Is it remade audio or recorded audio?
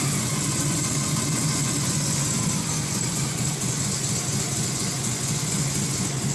remade